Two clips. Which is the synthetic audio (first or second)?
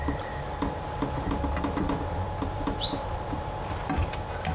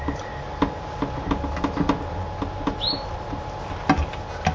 first